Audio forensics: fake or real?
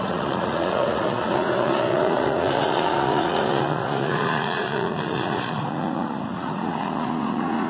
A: fake